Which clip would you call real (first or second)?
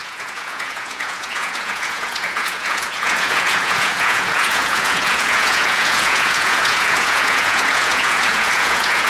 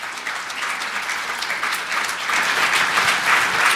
second